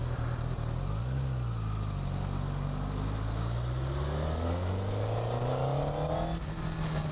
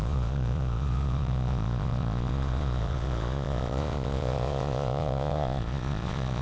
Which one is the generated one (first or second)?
second